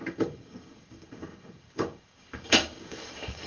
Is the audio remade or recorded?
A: remade